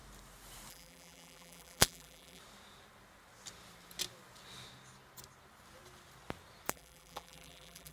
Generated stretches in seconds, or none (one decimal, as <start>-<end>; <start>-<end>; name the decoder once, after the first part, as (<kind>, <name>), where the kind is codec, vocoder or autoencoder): 0.7-2.4 (vocoder, BigVGAN v2); 6.7-7.9